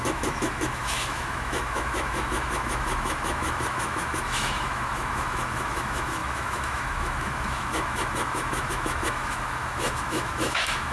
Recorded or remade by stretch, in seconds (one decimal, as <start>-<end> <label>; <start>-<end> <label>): 0.0-10.9 remade